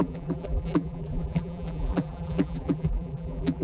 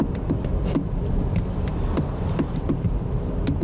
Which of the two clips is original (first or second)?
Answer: second